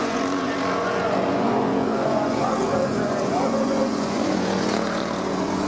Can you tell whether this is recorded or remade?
remade